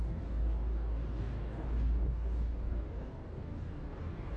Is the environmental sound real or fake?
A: fake